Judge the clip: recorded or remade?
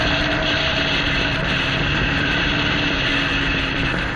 recorded